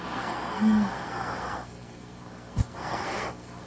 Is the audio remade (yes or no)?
yes